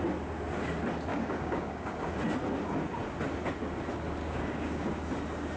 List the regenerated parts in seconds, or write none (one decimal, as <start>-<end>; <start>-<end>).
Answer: 1.1-2.2; 4.2-4.9